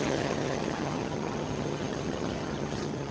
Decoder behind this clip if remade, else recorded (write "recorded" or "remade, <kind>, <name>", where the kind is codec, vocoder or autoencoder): remade, vocoder, HiFi-GAN